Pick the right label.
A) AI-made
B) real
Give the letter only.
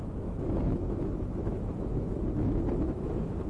A